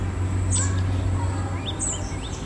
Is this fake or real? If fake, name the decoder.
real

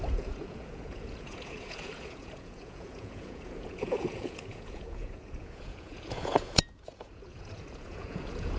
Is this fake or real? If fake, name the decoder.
fake, vocoder, Vocos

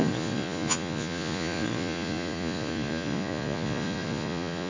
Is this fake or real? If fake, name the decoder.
fake, vocoder, Vocos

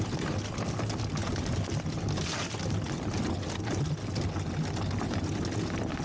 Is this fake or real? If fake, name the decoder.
real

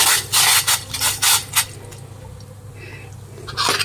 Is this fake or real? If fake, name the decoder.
real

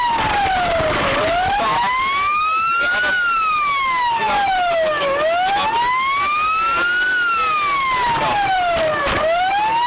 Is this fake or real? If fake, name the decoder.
real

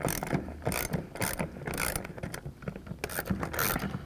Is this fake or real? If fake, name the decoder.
real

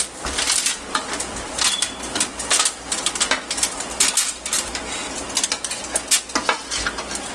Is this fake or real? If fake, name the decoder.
real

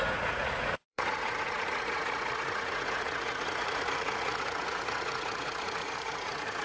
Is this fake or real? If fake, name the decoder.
fake, vocoder, Vocos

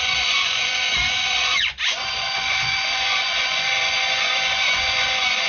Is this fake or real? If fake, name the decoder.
fake, vocoder, Vocos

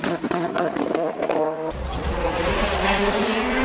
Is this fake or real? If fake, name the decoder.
fake, vocoder, Vocos